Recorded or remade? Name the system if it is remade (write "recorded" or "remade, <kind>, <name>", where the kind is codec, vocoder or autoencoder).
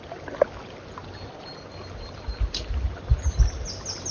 recorded